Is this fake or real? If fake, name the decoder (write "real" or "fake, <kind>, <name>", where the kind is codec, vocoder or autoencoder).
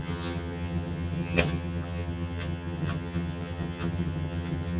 fake, vocoder, HiFi-GAN